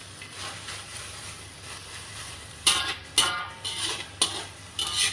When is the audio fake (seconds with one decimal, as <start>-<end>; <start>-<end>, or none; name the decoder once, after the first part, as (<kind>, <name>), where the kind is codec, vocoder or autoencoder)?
0.9-3.1 (vocoder, BigVGAN v2)